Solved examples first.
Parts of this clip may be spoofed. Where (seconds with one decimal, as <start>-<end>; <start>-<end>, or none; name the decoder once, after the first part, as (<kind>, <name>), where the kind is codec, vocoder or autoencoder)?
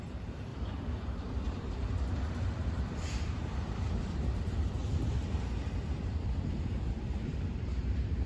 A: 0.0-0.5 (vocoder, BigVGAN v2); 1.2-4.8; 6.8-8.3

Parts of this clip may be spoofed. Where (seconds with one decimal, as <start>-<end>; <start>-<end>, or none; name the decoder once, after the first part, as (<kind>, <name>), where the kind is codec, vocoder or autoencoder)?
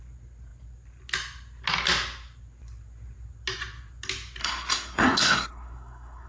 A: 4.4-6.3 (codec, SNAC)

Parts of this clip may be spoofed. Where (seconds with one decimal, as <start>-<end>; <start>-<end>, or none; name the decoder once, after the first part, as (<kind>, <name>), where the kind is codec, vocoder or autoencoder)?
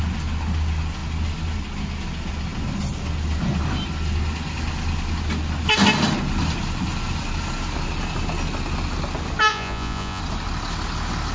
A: 9.5-10.2 (vocoder, Vocos)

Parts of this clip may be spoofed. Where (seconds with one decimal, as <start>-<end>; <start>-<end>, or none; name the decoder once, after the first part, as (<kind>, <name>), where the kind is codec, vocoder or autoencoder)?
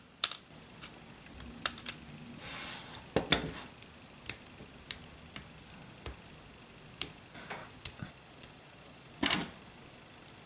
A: 7.6-9.1 (vocoder, Vocos)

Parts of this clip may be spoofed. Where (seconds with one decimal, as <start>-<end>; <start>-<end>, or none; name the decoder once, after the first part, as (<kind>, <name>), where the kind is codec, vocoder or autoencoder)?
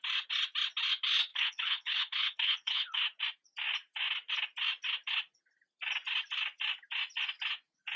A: 1.3-3.0 (codec, HILCodec)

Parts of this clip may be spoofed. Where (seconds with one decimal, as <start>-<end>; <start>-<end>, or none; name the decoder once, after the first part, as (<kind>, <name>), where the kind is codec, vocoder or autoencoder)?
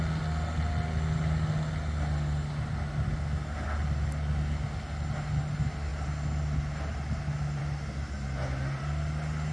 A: none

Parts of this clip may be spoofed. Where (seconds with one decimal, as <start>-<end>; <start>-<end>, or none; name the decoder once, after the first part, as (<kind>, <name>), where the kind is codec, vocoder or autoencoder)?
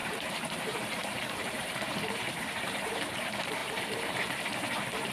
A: 0.0-3.1 (vocoder, BigVGAN v2); 3.6-4.4